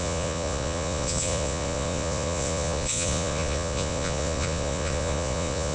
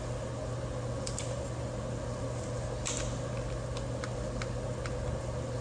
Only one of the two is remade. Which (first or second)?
first